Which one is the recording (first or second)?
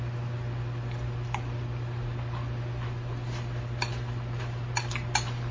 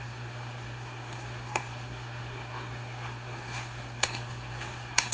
first